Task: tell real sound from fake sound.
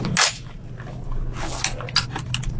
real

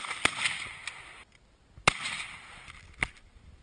real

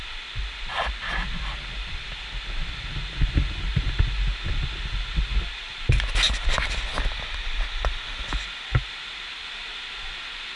real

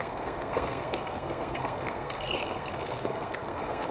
fake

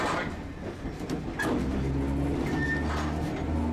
real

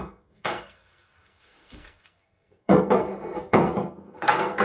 fake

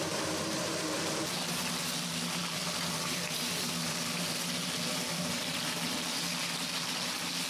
real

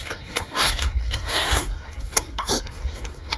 fake